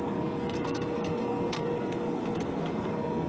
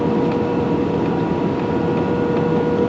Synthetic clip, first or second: first